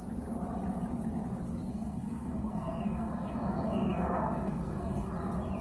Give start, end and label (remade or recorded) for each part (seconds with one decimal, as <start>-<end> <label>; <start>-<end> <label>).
0.0-1.7 recorded; 1.7-5.1 remade; 5.1-5.6 recorded